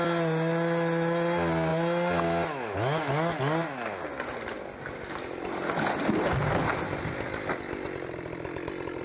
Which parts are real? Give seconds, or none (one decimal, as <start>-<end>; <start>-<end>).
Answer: 0.0-9.0

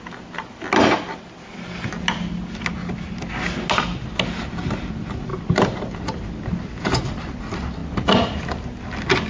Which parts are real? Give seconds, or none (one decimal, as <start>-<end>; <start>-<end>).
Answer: 0.0-9.3

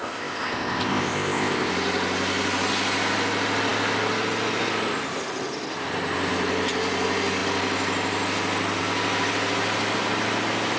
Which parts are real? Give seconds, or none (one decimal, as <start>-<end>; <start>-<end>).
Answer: 1.7-10.8

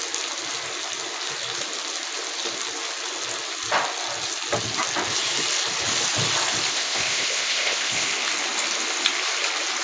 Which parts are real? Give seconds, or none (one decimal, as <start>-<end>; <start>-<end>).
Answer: 0.0-6.7; 8.1-9.8

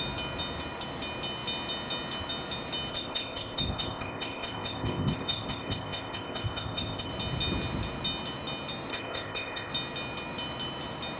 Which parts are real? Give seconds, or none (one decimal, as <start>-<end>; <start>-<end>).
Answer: 0.0-2.9; 7.1-8.9; 9.7-11.2

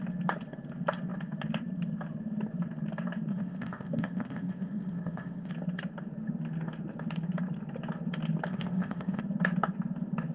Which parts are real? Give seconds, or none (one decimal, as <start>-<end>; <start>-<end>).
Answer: 0.0-3.3; 5.5-8.5; 9.2-10.3

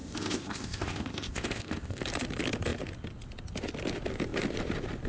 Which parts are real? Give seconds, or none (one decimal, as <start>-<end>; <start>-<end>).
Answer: 2.0-5.1

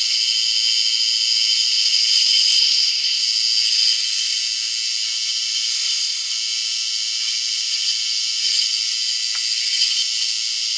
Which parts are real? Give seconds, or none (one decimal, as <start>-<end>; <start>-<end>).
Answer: 0.0-2.6; 3.2-5.7; 6.3-10.8